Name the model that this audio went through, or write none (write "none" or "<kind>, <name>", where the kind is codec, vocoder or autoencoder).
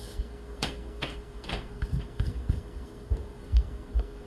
codec, SNAC